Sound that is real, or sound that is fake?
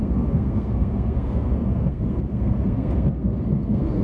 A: fake